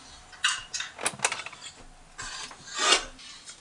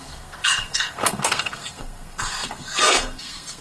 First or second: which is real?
first